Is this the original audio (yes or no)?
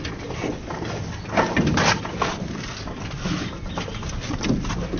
yes